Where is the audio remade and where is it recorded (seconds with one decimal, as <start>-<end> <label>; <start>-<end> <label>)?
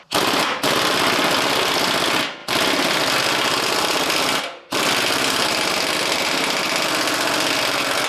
0.0-8.1 recorded